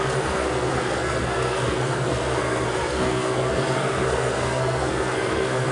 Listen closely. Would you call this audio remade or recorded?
remade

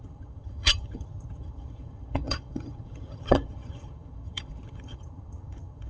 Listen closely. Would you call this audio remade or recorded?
remade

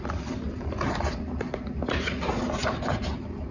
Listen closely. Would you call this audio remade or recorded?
recorded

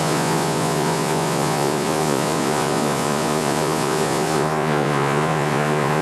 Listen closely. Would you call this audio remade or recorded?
remade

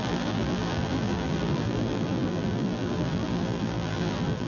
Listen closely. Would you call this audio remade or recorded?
remade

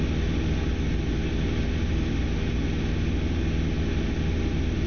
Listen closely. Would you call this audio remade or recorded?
recorded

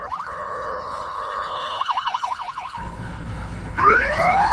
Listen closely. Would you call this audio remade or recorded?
remade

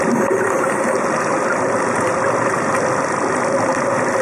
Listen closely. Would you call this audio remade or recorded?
recorded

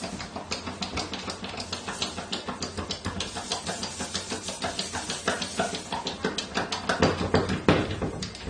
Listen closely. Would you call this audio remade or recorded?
recorded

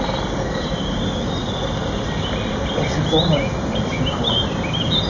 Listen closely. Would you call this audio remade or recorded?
recorded